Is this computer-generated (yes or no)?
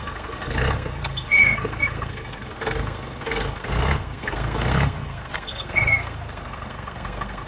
yes